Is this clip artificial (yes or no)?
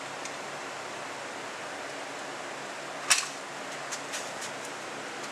no